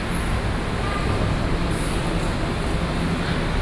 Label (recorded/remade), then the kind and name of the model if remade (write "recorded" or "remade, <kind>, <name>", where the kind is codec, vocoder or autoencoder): recorded